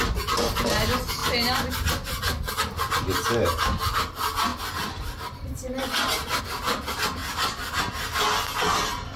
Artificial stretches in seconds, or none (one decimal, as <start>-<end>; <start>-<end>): 4.5-6.4; 7.2-7.7